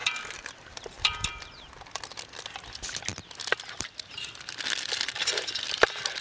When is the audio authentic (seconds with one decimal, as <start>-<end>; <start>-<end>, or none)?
1.7-3.5; 5.8-6.2